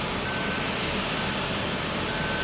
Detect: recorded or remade recorded